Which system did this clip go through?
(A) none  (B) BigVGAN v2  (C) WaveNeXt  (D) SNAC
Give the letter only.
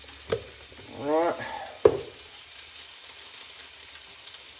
A